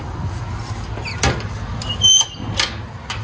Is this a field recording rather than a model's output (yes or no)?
yes